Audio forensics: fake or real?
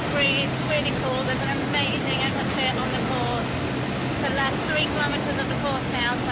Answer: real